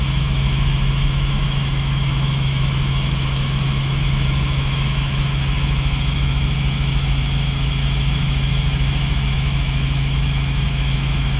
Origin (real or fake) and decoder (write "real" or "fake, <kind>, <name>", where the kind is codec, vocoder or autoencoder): fake, autoencoder, DAC-VAE